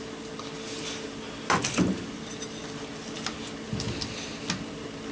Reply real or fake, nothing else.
real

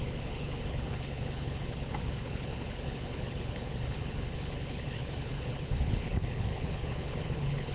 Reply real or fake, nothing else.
fake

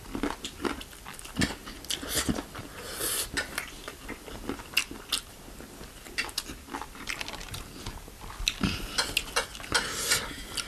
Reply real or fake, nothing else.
real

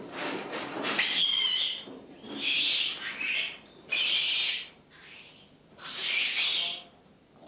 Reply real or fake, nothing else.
fake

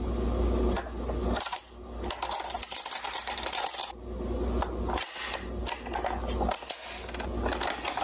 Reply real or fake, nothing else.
real